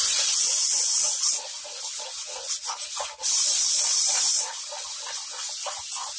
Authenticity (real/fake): real